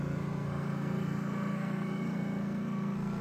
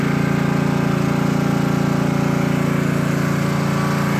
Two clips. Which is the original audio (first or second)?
second